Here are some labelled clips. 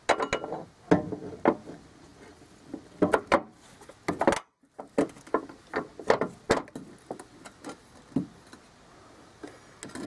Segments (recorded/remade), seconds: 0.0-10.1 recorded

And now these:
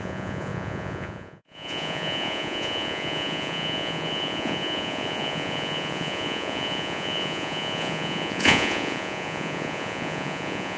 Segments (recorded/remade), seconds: 0.0-10.8 remade

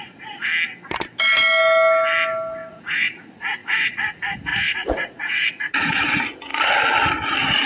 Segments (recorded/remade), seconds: 0.0-0.5 remade; 0.5-2.7 recorded; 2.7-6.5 remade; 6.5-7.7 recorded

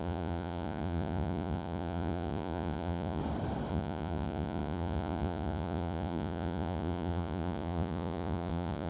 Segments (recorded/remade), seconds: 0.0-3.2 remade; 3.2-3.7 recorded; 3.7-8.9 remade